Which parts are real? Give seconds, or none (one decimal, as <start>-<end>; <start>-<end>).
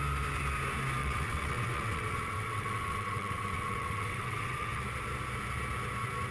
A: 0.0-1.0; 4.8-6.3